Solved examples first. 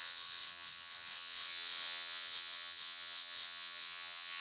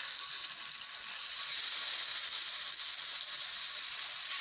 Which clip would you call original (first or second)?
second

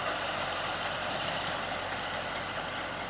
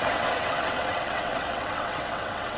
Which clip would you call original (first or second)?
first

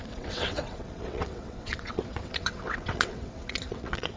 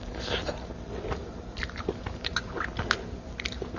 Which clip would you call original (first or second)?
second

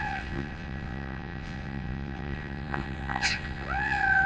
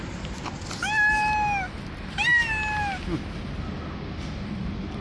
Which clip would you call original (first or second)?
second